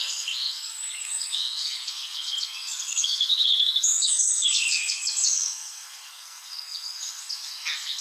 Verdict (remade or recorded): remade